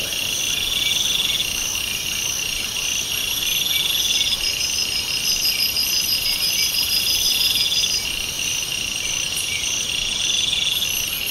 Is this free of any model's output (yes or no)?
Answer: yes